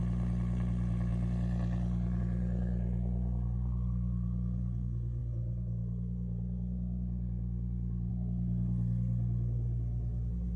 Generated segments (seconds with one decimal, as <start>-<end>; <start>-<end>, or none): none